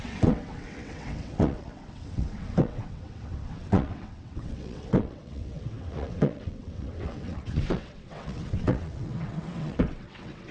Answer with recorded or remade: remade